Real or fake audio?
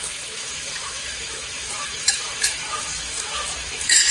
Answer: fake